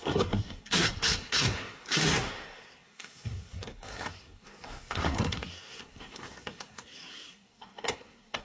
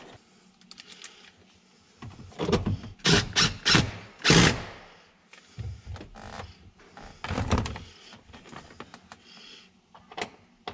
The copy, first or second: first